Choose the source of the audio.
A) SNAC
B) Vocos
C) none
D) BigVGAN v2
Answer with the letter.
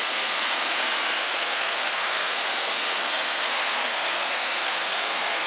A